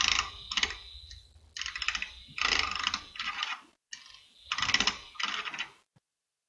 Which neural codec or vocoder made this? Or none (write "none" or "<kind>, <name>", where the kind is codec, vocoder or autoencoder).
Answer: none